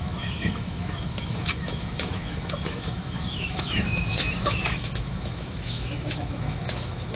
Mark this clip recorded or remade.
remade